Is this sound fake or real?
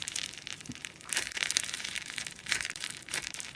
fake